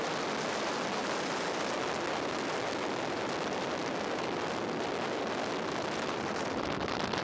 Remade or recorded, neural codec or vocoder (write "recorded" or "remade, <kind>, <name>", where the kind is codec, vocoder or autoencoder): recorded